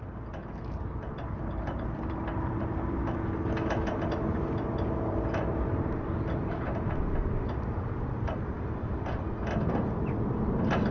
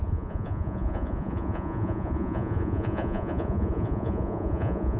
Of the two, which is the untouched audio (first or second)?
first